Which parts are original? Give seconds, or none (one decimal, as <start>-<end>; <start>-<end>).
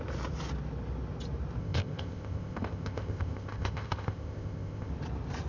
0.0-1.6; 4.9-5.5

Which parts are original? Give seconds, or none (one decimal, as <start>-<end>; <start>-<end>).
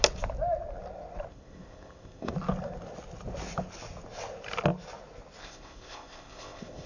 0.0-1.3; 2.3-5.4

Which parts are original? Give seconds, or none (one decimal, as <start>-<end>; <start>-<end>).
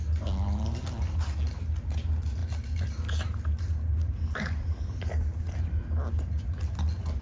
0.0-7.2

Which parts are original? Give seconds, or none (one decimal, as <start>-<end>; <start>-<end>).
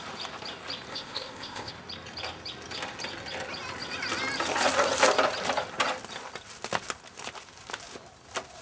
0.0-0.9; 1.7-8.6